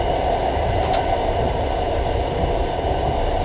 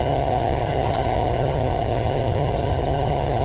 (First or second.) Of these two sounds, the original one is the first